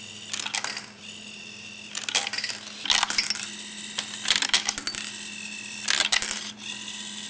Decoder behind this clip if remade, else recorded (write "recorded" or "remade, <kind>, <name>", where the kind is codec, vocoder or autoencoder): recorded